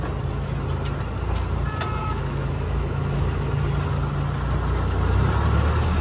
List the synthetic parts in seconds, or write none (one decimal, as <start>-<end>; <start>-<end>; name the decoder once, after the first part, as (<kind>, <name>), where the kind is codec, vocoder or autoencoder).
2.0-3.5 (autoencoder, DAC-VAE)